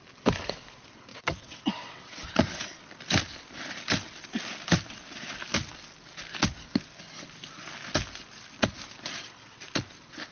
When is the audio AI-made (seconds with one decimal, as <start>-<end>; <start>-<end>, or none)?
1.1-2.3